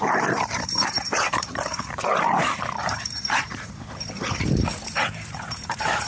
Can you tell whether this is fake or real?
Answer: fake